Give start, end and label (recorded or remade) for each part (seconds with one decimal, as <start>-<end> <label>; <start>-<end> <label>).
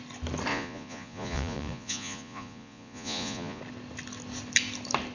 0.0-0.5 recorded; 0.5-3.6 remade; 3.6-5.1 recorded